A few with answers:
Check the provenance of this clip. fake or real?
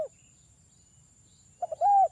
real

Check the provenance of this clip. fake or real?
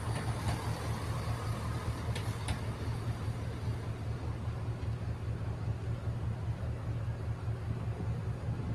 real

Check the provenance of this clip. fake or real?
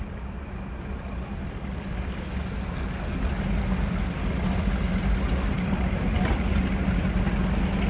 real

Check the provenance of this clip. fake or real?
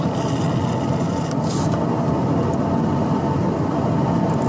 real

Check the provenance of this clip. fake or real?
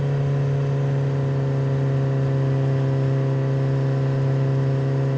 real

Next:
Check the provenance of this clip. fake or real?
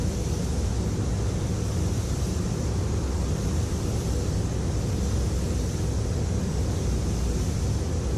real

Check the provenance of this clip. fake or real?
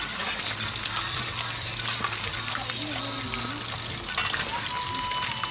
real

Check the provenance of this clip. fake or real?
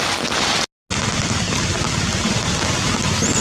real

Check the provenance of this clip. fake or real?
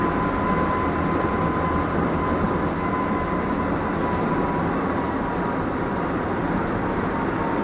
real